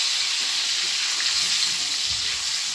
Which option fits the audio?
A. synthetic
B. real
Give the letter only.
B